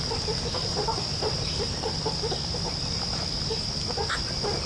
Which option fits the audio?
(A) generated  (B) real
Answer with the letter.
B